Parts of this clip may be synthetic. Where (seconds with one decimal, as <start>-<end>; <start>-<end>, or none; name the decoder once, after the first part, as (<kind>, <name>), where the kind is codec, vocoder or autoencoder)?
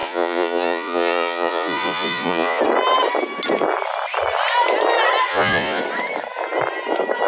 0.0-2.6 (vocoder, Vocos); 5.3-5.8